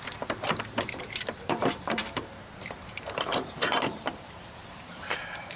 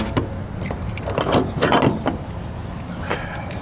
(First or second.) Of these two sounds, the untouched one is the second